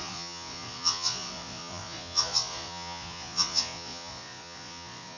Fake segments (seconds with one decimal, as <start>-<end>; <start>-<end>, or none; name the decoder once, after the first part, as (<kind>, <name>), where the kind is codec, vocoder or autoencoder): 0.0-5.2 (vocoder, Vocos)